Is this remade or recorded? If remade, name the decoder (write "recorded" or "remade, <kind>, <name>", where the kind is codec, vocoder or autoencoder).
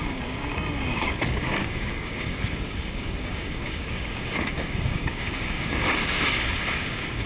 remade, codec, DAC